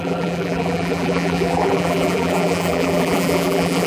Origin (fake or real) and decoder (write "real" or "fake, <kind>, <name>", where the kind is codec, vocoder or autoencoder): fake, vocoder, BigVGAN v2